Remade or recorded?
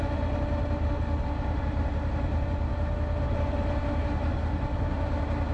recorded